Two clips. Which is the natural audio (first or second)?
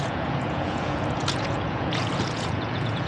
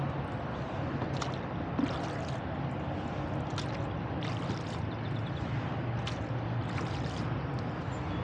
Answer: second